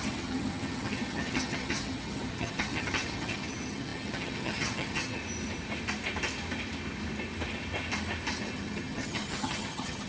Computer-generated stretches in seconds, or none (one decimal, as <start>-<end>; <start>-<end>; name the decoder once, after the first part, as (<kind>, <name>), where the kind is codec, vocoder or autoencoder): 0.0-5.2 (vocoder, HiFi-GAN); 8.4-10.1